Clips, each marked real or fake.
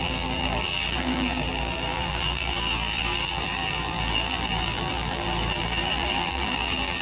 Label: fake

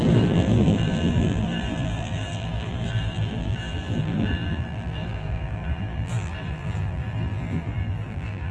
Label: fake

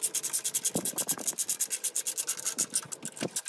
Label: real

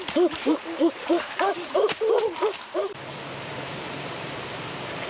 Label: fake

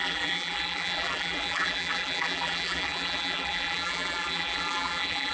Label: fake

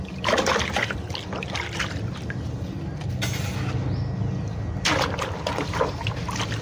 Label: real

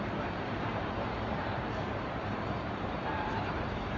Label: fake